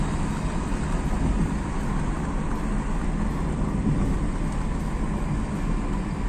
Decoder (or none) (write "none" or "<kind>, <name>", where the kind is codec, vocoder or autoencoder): none